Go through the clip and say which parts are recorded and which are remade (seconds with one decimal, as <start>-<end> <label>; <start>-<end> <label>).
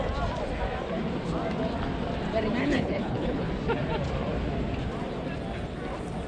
0.0-2.6 recorded; 2.6-3.5 remade; 3.5-6.3 recorded